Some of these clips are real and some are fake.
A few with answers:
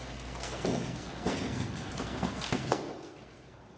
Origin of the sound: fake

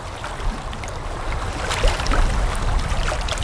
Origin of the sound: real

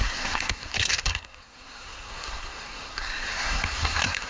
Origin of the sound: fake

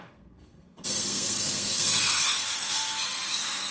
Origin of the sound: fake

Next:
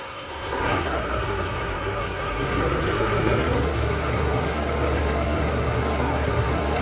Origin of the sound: fake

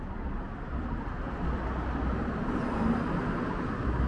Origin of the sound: real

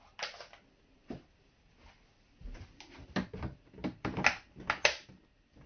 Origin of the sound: real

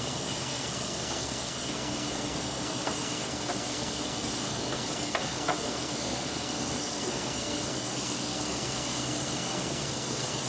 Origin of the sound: fake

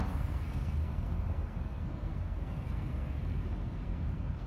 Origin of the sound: fake